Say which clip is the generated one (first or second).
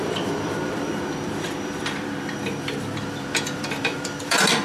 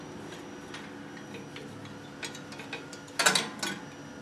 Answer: first